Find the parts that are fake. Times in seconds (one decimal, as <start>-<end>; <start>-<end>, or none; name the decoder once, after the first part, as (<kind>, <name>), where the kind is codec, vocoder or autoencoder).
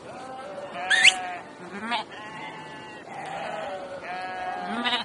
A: none